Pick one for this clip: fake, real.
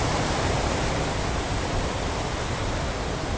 real